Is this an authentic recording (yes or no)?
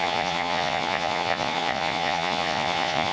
no